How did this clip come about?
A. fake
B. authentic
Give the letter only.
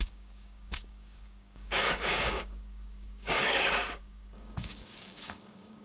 A